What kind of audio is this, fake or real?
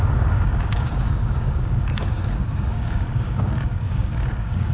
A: fake